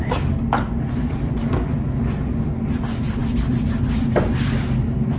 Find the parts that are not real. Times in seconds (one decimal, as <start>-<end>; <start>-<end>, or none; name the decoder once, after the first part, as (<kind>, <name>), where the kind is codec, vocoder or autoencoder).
none